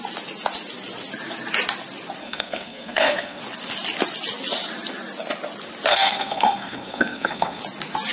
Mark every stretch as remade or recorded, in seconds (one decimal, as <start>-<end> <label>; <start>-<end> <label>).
0.0-2.2 recorded; 2.2-3.4 remade; 3.4-5.9 recorded; 5.9-7.6 remade; 7.6-8.1 recorded